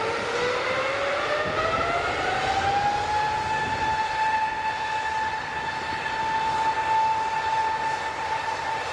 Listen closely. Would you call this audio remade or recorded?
recorded